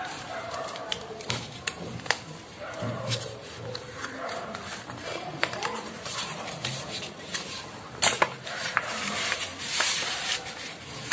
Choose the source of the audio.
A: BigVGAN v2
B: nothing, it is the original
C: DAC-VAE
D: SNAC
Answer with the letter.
A